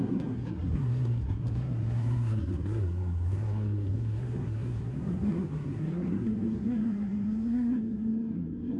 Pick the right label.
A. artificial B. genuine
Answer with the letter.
A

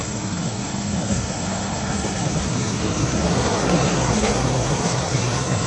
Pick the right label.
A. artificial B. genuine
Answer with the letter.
A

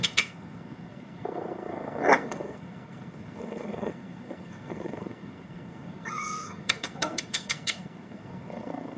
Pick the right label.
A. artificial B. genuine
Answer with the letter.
A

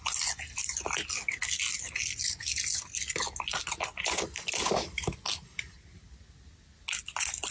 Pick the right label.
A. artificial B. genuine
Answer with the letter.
B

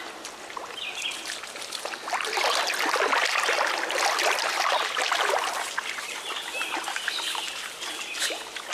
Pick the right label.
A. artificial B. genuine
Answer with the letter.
B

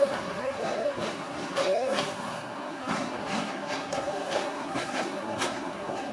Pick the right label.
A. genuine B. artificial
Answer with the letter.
B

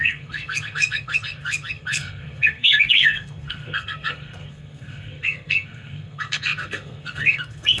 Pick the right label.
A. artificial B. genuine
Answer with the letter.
A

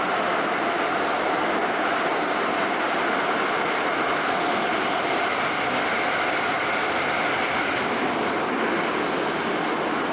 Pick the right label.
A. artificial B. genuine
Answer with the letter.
B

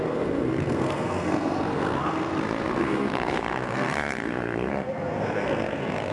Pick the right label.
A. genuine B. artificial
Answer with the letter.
B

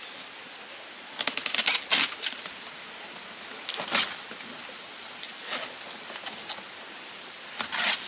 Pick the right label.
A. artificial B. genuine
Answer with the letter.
B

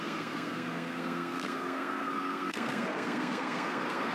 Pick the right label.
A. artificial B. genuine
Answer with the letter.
A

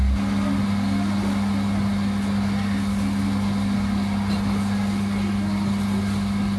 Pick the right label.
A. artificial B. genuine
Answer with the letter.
B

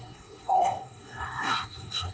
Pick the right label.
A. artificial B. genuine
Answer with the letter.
A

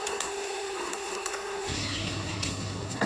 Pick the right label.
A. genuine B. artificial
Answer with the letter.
B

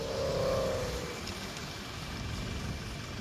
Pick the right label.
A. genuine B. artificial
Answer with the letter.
A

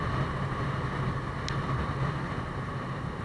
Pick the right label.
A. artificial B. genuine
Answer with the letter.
B